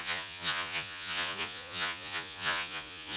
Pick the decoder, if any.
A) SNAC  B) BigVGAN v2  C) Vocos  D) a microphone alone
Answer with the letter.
C